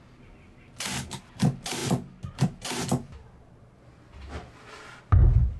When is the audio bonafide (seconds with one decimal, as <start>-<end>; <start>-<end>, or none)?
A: 0.0-5.6